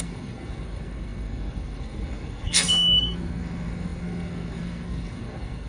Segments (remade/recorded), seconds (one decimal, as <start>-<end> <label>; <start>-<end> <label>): 0.0-5.7 remade